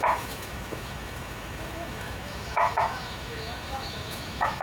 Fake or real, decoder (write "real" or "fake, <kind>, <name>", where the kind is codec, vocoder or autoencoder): fake, autoencoder, DAC-VAE